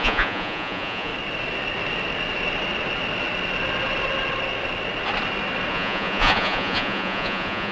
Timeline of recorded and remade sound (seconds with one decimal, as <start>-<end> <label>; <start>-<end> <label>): 0.0-1.1 remade; 1.1-5.7 recorded; 5.7-7.7 remade